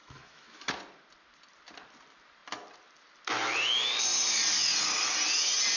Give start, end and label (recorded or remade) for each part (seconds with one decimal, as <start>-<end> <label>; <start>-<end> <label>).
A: 0.0-0.7 remade; 0.7-5.8 recorded